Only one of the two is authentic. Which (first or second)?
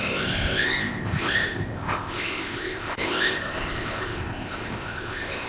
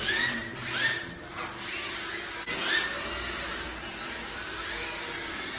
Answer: second